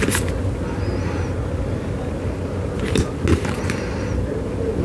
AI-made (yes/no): no